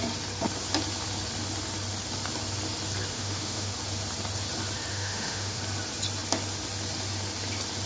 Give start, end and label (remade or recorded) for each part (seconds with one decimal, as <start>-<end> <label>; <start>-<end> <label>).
0.0-3.1 recorded; 3.1-3.7 remade; 3.7-4.9 recorded; 4.9-5.6 remade; 5.6-7.9 recorded